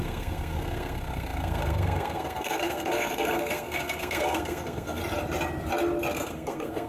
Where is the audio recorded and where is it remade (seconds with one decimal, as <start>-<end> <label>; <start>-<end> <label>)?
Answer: 0.0-5.0 remade; 5.0-6.1 recorded; 6.1-6.9 remade